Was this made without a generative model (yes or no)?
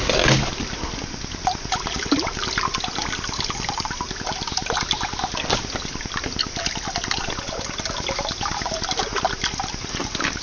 yes